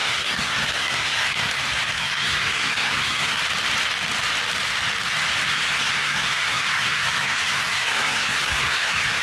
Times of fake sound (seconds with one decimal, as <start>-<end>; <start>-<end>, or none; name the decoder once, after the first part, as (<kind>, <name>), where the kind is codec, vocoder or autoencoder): 0.0-1.5 (codec, SNAC); 1.9-3.4; 5.5-9.2